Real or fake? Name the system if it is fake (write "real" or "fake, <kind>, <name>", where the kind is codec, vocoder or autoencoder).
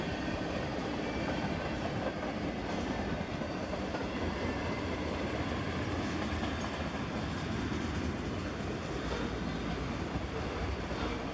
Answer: real